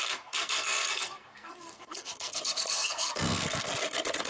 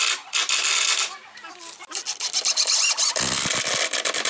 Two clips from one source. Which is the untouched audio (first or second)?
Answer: second